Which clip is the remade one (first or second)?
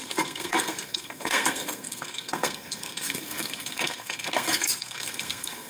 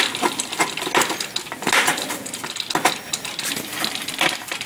first